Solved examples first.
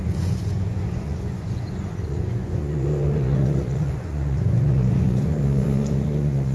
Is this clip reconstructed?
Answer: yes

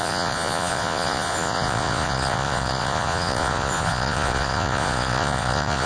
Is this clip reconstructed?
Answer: yes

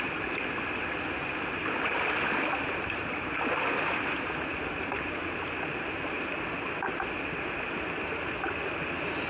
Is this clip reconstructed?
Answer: no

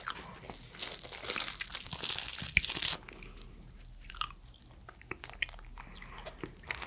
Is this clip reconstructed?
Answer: no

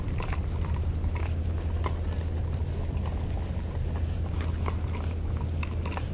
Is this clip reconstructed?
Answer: no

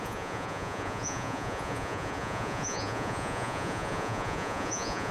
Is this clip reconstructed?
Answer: yes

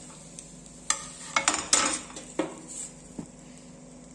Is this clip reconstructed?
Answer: no